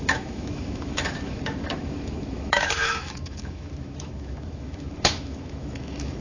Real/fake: fake